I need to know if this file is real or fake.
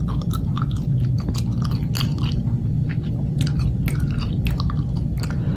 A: real